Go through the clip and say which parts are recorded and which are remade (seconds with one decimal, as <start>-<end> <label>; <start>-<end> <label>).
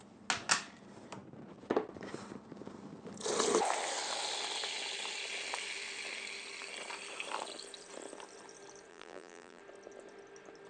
0.0-8.9 recorded; 8.9-9.6 remade; 9.6-10.7 recorded